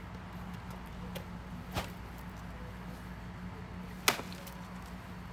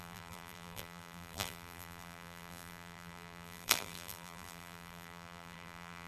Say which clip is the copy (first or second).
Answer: second